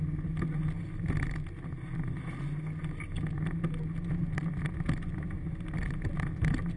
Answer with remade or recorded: recorded